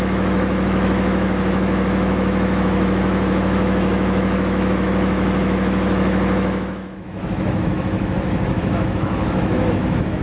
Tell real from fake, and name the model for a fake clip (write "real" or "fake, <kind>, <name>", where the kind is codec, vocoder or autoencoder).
fake, autoencoder, DAC-VAE